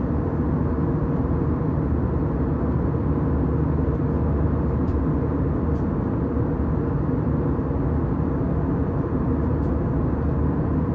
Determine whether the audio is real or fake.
real